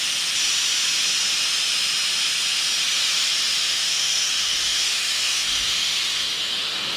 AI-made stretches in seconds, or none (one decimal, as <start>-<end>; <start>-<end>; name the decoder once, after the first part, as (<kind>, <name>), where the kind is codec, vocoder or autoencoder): 3.6-7.0 (autoencoder, DAC-VAE)